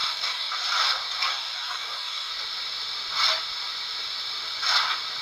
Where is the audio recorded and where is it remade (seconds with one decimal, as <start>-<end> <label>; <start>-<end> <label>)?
0.0-0.5 remade; 0.5-1.3 recorded; 1.3-2.3 remade; 2.3-5.2 recorded